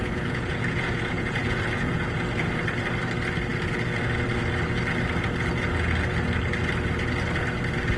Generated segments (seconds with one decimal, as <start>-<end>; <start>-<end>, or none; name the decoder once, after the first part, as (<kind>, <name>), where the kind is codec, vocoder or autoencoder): 0.0-2.2 (vocoder, Vocos)